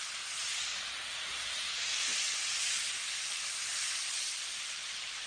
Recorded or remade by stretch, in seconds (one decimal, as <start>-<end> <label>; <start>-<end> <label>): 0.0-3.7 remade; 3.7-4.3 recorded; 4.3-5.3 remade